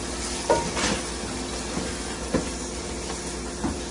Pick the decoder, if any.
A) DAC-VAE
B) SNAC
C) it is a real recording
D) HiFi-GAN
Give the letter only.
C